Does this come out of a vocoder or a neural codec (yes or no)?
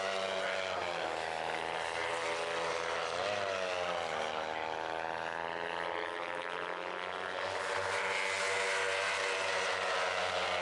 no